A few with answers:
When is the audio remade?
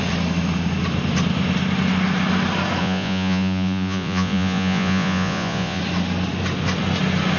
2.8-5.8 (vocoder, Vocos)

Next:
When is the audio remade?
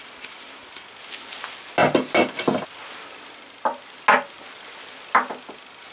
none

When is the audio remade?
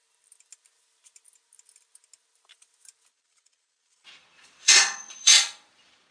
3.1-6.1 (vocoder, Vocos)